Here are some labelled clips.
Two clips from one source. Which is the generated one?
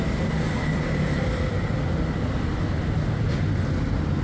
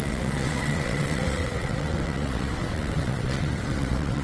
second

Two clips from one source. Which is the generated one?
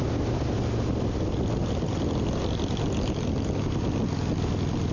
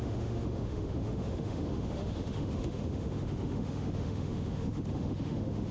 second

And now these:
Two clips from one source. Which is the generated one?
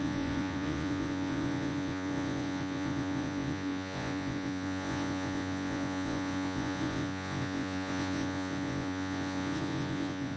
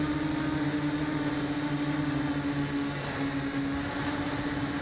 first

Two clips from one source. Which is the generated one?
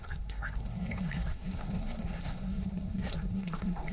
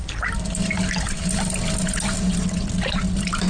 first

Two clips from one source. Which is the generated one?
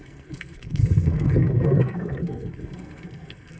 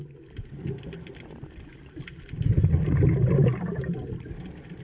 first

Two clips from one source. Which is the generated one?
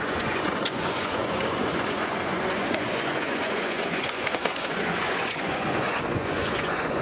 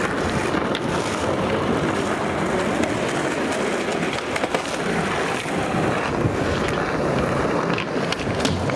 first